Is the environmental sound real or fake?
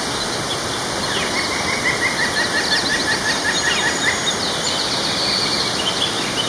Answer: real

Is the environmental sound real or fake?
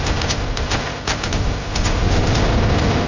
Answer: fake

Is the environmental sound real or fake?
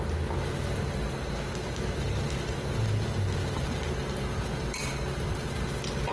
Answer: real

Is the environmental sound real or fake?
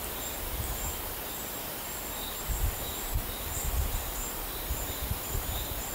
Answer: fake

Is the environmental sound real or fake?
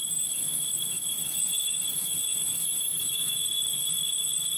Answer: fake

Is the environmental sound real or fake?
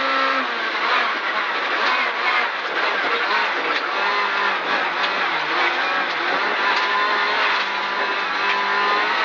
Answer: real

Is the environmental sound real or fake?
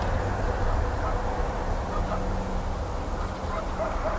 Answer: real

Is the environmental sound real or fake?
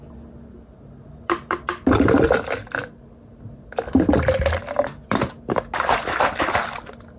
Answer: real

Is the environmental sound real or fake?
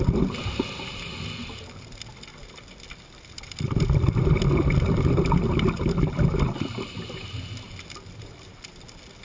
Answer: real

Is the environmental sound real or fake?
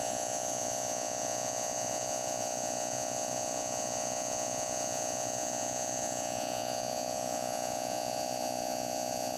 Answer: fake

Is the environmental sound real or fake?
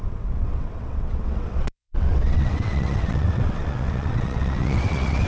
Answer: fake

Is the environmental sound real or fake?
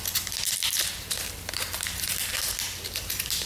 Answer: fake